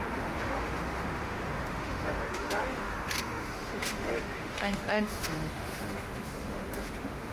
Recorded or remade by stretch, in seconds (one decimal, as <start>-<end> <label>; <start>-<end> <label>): 0.0-7.3 remade